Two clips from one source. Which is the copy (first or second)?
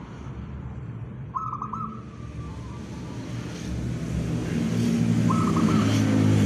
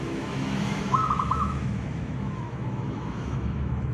second